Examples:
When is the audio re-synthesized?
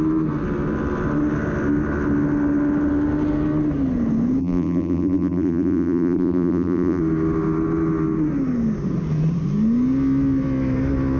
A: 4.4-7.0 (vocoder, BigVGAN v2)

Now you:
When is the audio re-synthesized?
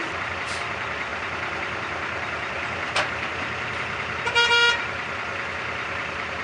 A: 0.0-6.4 (vocoder, BigVGAN v2)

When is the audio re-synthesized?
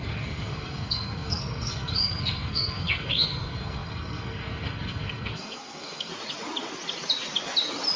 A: 0.0-6.1 (codec, SNAC)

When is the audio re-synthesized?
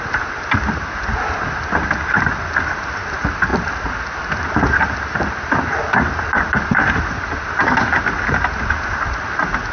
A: none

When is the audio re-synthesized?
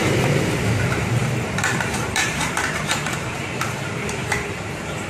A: 0.0-5.1 (vocoder, BigVGAN v2)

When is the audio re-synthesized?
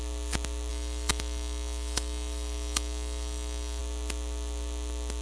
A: 0.7-3.8 (autoencoder, DAC-VAE)